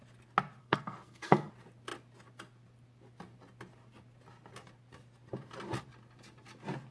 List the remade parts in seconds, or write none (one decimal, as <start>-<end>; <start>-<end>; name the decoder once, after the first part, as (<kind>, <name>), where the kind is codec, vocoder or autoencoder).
0.6-1.5 (codec, SNAC)